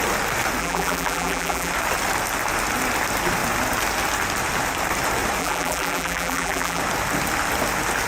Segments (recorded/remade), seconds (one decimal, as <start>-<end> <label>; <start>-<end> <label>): 0.0-0.6 recorded; 0.6-1.7 remade; 1.7-5.4 recorded; 5.4-6.8 remade; 6.8-8.1 recorded